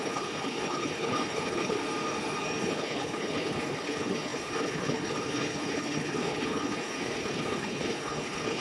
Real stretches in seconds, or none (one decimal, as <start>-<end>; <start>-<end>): 1.8-2.6